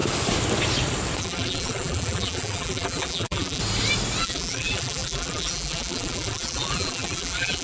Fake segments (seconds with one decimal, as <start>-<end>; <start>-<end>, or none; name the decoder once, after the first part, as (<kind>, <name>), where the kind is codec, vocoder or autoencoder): 1.2-3.6 (vocoder, BigVGAN v2); 4.2-7.6